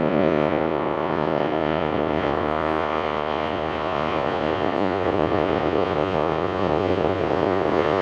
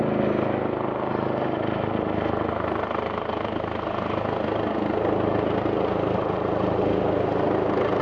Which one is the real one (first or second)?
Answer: second